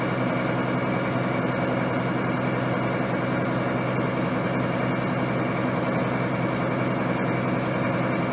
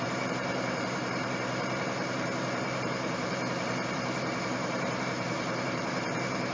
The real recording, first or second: first